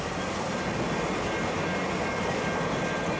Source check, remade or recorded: recorded